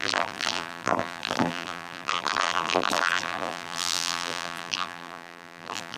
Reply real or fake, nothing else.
fake